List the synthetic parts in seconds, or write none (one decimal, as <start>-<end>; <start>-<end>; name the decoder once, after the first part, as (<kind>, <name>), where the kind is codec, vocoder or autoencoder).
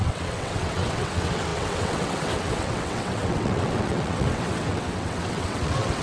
0.0-6.0 (vocoder, WaveNeXt)